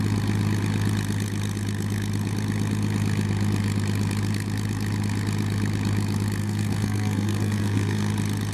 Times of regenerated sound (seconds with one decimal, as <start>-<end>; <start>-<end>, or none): 6.4-8.1